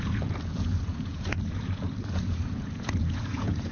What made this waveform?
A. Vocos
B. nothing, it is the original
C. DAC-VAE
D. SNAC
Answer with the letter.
A